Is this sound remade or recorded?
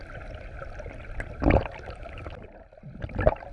recorded